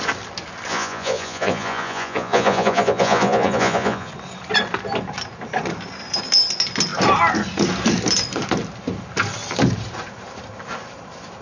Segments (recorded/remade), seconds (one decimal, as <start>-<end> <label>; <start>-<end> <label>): 0.0-0.7 recorded; 0.7-4.1 remade; 4.1-11.4 recorded